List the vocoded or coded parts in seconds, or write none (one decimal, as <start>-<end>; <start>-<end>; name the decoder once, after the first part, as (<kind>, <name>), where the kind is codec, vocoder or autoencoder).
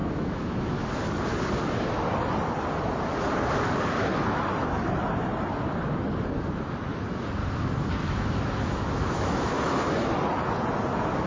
0.0-0.9 (autoencoder, DAC-VAE); 7.4-9.9